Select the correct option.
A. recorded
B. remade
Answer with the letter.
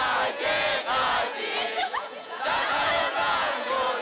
B